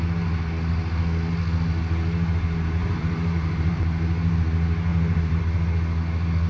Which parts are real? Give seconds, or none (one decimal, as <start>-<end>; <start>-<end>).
0.0-2.8; 3.8-4.9; 5.4-6.5

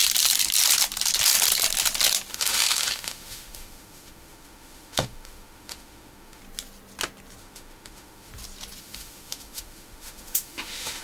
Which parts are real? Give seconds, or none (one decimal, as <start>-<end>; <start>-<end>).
0.0-2.3; 6.4-7.4; 8.3-8.8

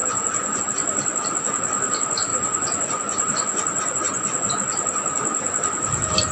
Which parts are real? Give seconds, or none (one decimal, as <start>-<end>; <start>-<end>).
0.6-2.3; 4.5-6.3